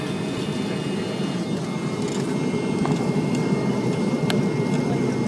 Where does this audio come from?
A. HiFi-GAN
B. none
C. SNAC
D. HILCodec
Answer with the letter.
B